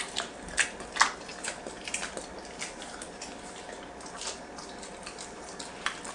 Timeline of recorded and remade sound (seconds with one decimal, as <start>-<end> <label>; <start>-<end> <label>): 0.0-6.1 recorded